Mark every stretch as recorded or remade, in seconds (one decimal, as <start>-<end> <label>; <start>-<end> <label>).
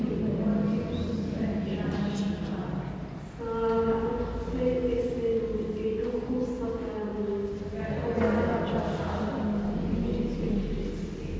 0.0-11.4 recorded